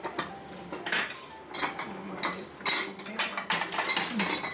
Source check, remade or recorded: recorded